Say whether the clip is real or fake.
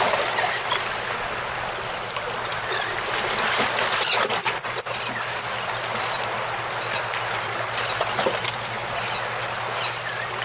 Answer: real